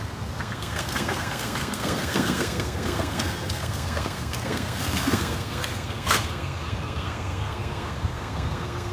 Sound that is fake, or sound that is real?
fake